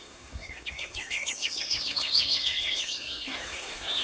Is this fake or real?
fake